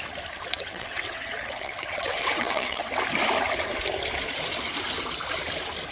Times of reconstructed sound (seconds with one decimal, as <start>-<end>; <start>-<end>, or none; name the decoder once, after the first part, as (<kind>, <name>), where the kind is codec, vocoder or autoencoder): 0.5-2.8 (vocoder, WaveNeXt)